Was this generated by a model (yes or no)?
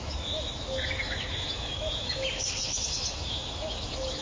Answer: yes